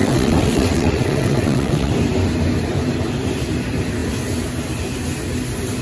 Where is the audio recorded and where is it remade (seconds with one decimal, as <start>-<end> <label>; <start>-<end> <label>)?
0.0-1.9 remade; 1.9-5.8 recorded